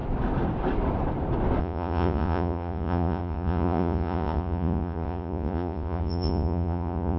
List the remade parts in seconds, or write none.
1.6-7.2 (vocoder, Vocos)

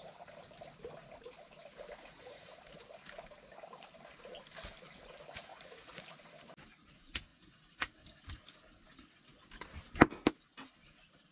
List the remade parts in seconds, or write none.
2.0-2.6 (vocoder, Vocos); 5.5-6.0; 7.3-7.9

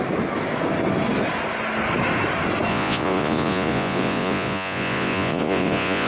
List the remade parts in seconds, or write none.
2.7-6.1 (vocoder, Vocos)

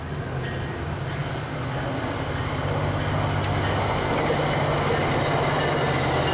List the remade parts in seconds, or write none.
none

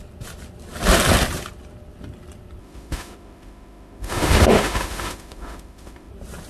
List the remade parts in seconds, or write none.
2.6-6.1 (autoencoder, DAC-VAE)

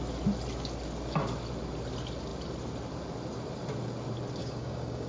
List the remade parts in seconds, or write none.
4.4-5.1 (codec, DAC)